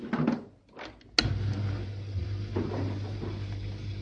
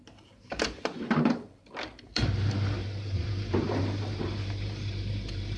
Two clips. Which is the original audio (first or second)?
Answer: first